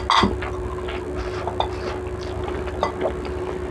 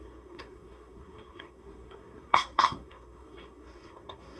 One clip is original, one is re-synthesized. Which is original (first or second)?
first